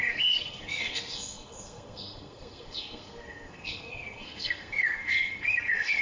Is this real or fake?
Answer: fake